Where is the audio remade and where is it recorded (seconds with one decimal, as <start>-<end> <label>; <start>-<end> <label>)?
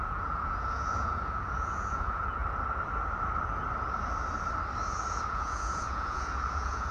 0.0-2.4 remade; 2.4-5.1 recorded; 5.1-6.9 remade